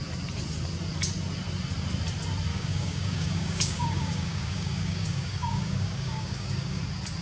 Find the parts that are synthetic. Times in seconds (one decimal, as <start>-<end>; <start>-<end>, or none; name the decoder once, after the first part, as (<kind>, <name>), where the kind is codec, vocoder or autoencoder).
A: 2.5-6.8 (codec, DAC)